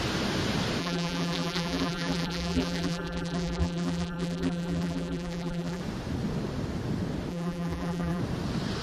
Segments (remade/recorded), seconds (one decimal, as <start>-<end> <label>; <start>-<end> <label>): 0.0-0.8 recorded; 0.8-5.8 remade; 5.8-7.3 recorded; 7.3-8.2 remade; 8.2-8.8 recorded